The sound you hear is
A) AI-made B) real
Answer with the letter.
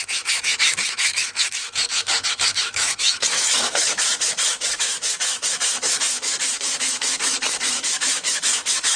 A